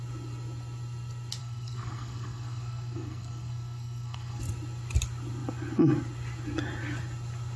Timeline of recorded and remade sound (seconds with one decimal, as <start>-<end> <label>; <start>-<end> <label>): 0.0-1.4 recorded; 1.4-4.4 remade; 4.4-7.6 recorded